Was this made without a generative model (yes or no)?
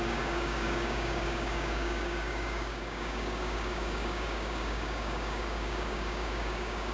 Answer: no